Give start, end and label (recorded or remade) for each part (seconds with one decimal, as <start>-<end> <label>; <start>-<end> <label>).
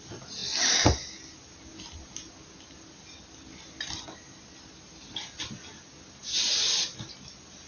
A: 0.0-7.7 recorded